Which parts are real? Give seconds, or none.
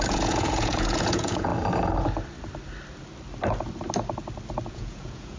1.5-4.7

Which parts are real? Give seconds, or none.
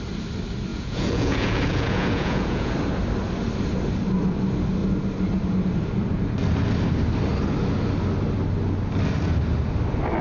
0.0-0.7; 2.7-10.2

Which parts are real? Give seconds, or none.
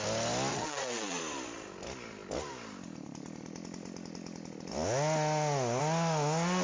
0.0-0.5; 1.2-6.6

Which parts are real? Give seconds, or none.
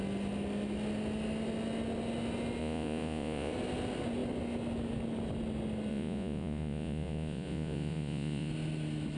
0.0-2.6; 3.5-5.9; 8.5-9.2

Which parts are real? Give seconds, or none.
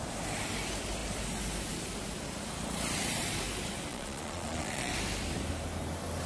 0.0-3.9; 4.9-6.3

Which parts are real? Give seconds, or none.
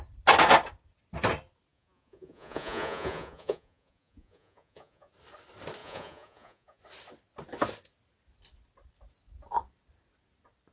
0.0-1.7; 5.1-5.8; 6.8-10.7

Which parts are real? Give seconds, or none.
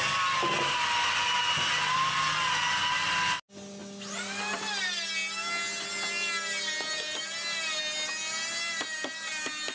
0.0-9.7